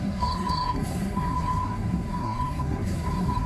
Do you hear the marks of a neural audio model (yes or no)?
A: yes